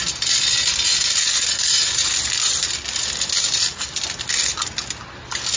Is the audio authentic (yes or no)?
yes